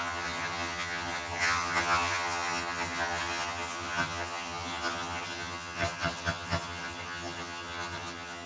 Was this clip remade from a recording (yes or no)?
yes